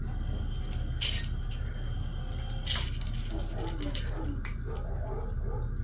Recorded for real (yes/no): yes